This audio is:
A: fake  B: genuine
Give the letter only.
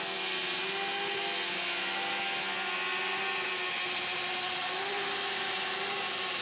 B